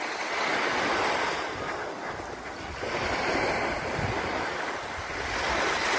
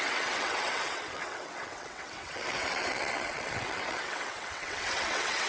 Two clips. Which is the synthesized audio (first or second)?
second